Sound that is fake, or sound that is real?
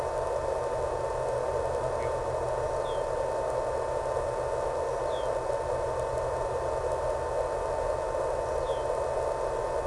real